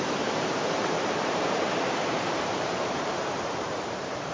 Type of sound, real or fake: fake